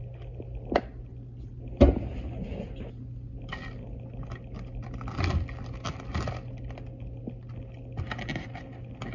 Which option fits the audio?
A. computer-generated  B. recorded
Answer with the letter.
B